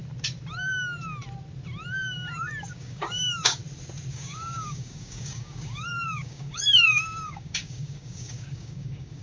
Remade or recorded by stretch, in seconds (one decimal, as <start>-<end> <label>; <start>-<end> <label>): 0.0-2.8 recorded; 2.8-3.6 remade; 3.6-4.1 recorded; 4.1-9.2 remade